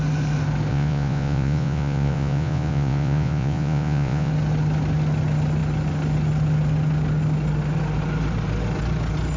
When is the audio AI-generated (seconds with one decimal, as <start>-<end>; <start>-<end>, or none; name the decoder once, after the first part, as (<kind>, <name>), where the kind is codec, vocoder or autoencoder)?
0.7-4.3 (vocoder, Vocos)

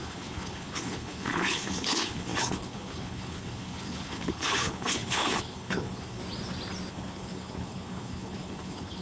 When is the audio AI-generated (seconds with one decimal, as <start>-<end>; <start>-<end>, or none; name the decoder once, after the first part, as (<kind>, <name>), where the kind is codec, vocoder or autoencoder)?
0.0-6.2 (codec, HILCodec); 6.9-9.0

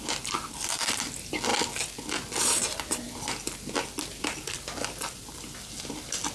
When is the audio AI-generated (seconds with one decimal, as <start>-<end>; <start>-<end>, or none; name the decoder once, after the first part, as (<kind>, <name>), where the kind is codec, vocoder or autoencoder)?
none

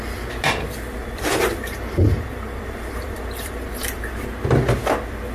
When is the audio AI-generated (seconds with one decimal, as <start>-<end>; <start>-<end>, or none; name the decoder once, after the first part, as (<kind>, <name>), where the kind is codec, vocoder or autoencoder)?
1.0-4.2 (vocoder, BigVGAN v2)